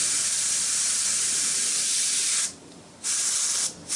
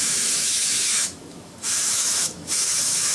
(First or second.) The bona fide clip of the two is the first